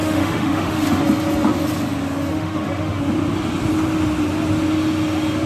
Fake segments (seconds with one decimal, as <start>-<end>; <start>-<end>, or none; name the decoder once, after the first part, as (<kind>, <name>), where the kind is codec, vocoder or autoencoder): 0.0-1.0 (autoencoder, DAC-VAE); 2.3-3.0